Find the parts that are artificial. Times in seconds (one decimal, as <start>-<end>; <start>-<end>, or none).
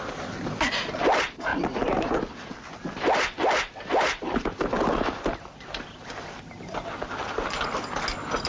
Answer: 1.5-6.6